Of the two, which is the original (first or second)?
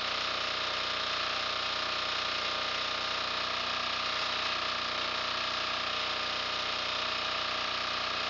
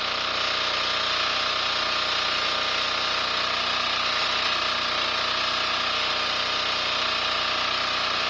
second